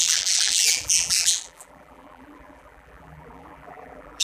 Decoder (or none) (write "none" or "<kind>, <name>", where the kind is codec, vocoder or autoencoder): vocoder, BigVGAN v2